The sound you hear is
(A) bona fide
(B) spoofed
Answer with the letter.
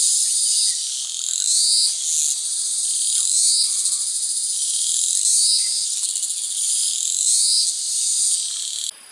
A